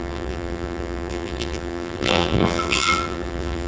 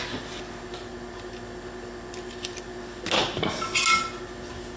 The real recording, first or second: second